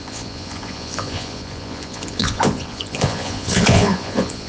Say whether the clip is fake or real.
fake